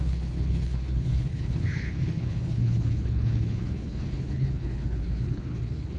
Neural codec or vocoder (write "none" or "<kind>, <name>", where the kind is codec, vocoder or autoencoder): codec, HILCodec